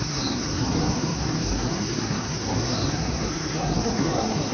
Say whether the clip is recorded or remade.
remade